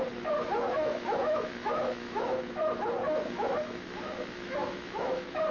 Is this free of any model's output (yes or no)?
no